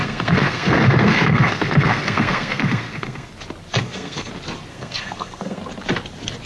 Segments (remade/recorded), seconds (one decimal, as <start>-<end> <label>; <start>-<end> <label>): 0.0-3.3 remade; 3.3-3.7 recorded; 3.7-4.3 remade; 4.3-4.7 recorded; 4.7-5.6 remade; 5.6-6.5 recorded